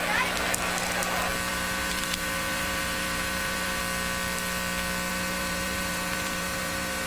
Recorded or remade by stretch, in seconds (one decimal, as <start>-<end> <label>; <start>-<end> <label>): 0.0-1.5 recorded; 1.5-3.8 remade; 3.8-5.1 recorded; 5.1-7.1 remade